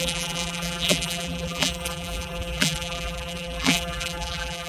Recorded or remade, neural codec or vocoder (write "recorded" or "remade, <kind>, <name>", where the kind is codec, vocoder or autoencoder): remade, vocoder, BigVGAN v2